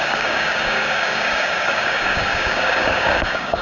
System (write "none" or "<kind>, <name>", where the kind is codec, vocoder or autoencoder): codec, DAC